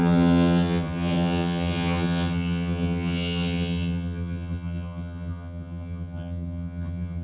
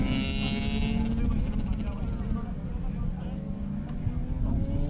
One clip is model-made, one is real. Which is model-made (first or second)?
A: first